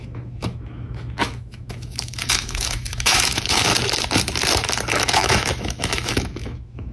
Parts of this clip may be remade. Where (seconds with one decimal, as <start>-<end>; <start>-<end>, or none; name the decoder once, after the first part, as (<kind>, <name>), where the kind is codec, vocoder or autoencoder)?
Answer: 0.0-3.7 (autoencoder, DAC-VAE); 4.9-6.9